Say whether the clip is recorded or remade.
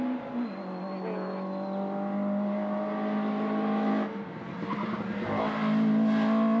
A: recorded